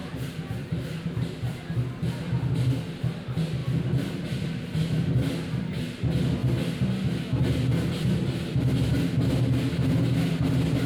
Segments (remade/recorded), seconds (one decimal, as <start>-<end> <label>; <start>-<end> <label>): 0.0-1.6 remade; 1.6-3.6 recorded; 3.6-5.1 remade; 5.1-10.9 recorded